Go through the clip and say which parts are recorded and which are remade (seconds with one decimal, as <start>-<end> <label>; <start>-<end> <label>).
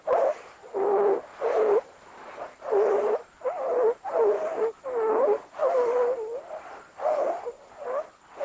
0.0-8.4 recorded